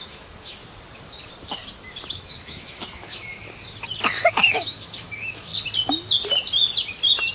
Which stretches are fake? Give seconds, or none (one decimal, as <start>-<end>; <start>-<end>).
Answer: 0.0-0.6; 2.1-3.3; 4.2-5.5